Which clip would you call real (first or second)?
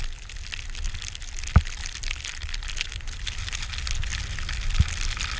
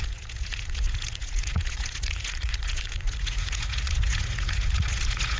first